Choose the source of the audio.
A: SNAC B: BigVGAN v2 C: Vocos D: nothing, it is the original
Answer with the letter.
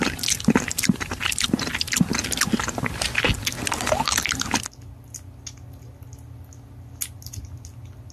D